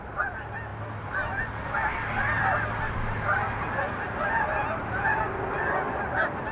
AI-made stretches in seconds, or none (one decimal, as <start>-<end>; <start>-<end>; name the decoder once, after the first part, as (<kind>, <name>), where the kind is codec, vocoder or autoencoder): none